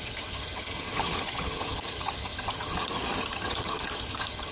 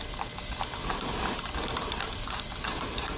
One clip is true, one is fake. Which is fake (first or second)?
first